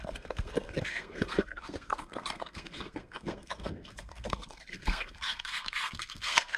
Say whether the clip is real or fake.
fake